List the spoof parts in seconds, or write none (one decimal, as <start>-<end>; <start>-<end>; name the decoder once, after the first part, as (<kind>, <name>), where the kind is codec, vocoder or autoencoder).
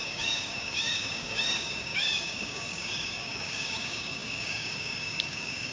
0.0-5.7 (codec, DAC)